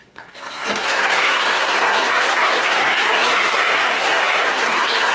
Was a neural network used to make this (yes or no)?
yes